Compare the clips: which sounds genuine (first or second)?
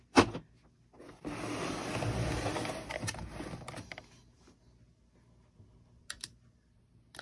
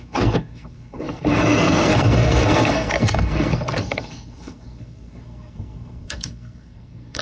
first